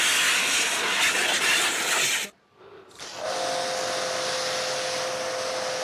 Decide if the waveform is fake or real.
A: real